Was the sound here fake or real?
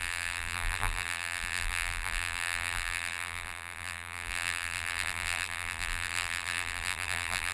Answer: fake